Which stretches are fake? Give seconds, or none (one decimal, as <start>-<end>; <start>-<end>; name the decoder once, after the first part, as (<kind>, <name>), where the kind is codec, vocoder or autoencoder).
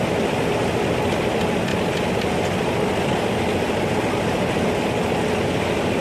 none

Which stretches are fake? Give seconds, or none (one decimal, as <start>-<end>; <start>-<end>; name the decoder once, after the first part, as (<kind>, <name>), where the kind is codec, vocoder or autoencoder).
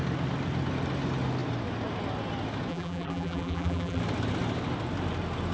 2.7-4.0 (vocoder, BigVGAN v2)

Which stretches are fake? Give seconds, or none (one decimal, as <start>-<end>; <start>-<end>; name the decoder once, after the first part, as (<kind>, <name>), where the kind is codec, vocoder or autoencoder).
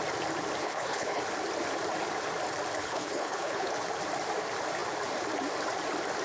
0.6-1.2 (codec, HILCodec); 2.8-3.7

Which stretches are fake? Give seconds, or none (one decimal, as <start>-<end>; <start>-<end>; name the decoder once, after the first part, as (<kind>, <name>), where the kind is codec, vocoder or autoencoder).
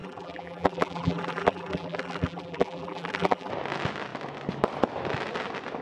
0.0-3.5 (vocoder, BigVGAN v2)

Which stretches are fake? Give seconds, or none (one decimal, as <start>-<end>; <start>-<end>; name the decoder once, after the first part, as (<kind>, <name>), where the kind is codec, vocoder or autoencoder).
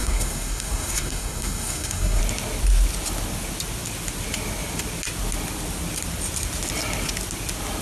0.0-2.2 (codec, SNAC)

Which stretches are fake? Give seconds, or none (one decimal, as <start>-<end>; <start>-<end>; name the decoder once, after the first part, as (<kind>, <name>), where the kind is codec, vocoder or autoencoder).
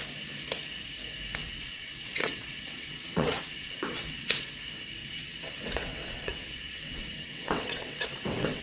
1.4-4.5 (vocoder, WaveNeXt); 5.0-8.6